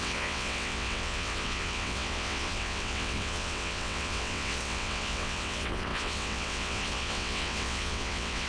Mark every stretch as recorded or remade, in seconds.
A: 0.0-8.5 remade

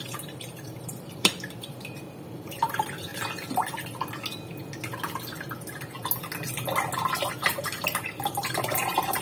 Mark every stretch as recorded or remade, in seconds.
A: 0.0-3.1 remade; 3.1-7.3 recorded; 7.3-9.2 remade

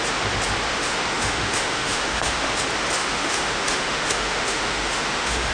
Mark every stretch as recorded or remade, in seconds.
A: 0.0-0.7 recorded; 0.7-2.6 remade; 2.6-3.0 recorded; 3.0-5.5 remade

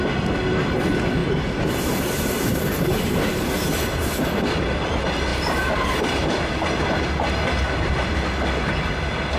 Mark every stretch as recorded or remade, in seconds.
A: 0.0-9.4 recorded

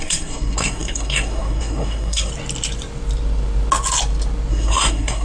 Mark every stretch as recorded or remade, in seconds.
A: 0.0-2.3 remade; 2.3-4.5 recorded; 4.5-5.2 remade